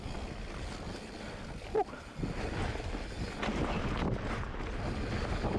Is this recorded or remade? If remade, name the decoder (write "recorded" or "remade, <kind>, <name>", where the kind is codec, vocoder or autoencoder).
recorded